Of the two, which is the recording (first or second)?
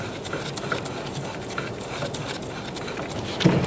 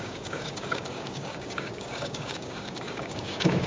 first